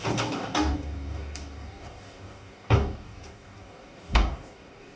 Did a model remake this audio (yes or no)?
yes